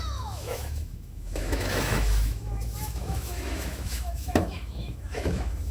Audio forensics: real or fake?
fake